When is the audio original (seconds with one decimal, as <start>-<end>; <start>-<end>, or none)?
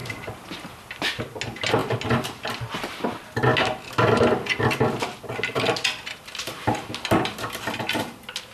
0.0-8.5